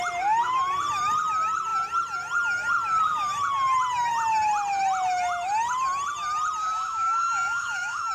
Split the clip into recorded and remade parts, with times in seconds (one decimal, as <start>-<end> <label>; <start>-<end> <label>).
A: 0.0-6.6 recorded; 6.6-8.1 remade